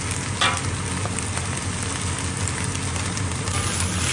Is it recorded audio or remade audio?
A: recorded